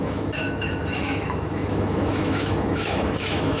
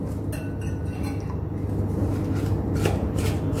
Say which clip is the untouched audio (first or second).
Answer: second